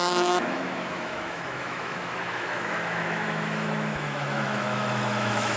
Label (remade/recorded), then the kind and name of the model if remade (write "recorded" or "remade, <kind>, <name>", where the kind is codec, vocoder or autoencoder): remade, autoencoder, DAC-VAE